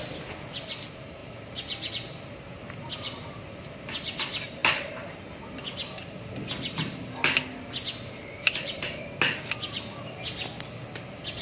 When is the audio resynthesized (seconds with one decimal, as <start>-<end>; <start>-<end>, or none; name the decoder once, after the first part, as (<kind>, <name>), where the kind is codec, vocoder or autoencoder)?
none